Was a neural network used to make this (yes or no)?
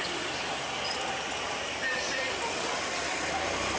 no